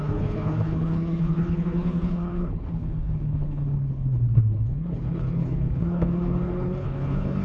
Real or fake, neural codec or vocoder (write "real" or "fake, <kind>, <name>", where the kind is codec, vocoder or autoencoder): fake, codec, HILCodec